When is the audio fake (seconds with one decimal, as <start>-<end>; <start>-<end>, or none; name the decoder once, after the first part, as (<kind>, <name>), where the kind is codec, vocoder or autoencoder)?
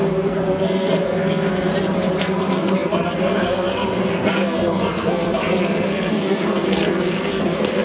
0.0-1.7 (codec, SNAC); 2.2-7.8